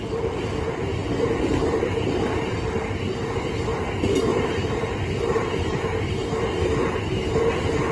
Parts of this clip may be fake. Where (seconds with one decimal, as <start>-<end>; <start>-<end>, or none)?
1.0-2.6; 4.3-5.8